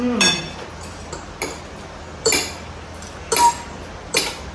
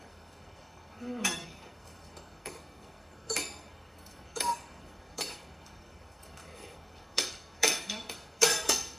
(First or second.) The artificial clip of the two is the second